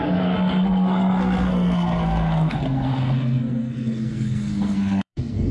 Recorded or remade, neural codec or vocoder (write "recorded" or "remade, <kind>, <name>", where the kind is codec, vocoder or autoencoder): remade, codec, SNAC